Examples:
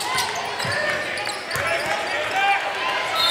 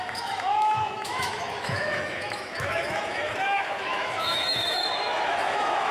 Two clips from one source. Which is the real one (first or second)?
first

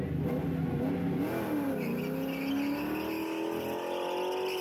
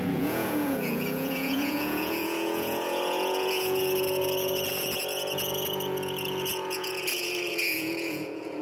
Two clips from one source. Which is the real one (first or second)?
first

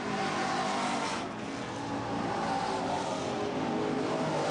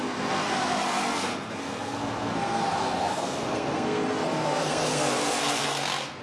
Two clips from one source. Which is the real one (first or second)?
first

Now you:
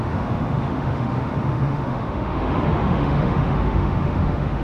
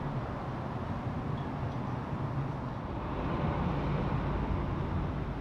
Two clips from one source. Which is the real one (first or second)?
second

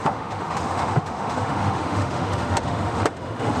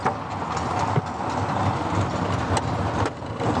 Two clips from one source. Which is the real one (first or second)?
second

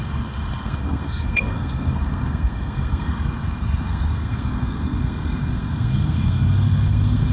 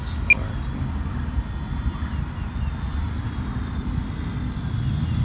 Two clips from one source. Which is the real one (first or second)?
second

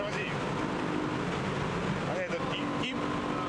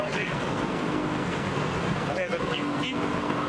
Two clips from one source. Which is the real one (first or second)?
first